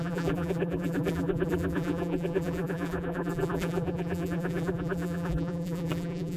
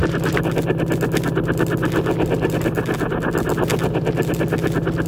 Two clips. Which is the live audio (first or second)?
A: second